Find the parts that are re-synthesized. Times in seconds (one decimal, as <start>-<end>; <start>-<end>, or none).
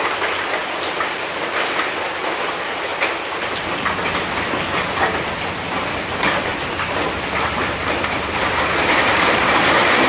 0.6-2.2; 6.5-10.1